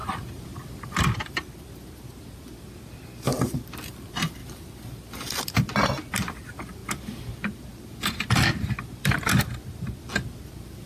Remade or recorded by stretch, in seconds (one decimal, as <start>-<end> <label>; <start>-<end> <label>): 0.0-10.9 recorded